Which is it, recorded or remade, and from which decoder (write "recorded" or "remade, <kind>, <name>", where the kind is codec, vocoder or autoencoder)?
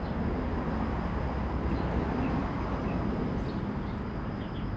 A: recorded